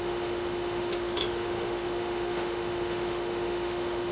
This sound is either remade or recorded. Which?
remade